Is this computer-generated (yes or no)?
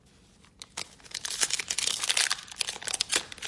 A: no